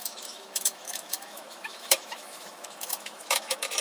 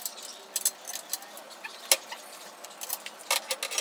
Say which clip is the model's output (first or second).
first